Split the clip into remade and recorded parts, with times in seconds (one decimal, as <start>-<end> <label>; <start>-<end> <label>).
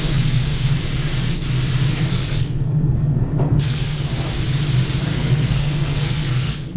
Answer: 0.0-0.7 remade; 0.7-1.9 recorded; 1.9-4.1 remade; 4.1-5.0 recorded; 5.0-6.8 remade